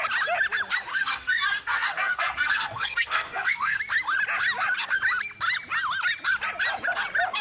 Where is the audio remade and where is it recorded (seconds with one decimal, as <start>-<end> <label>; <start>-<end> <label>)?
0.0-0.9 recorded; 0.9-3.8 remade; 3.8-7.4 recorded